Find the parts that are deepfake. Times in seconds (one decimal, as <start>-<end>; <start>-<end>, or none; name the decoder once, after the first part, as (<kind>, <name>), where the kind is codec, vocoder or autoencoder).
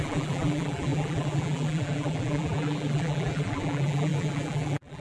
0.0-5.0 (vocoder, BigVGAN v2)